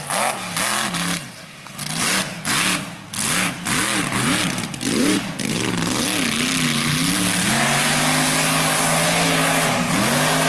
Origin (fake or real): real